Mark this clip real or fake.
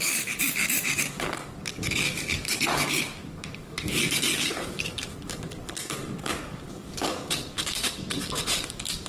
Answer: fake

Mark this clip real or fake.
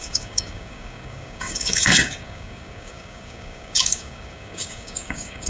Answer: fake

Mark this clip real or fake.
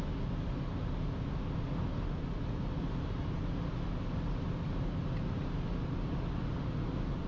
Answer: real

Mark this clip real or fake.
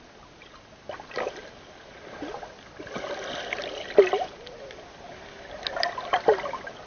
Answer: real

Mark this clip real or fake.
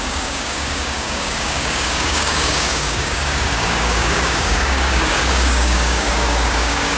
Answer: fake